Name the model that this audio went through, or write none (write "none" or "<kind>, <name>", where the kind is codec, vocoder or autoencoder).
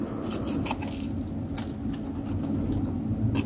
none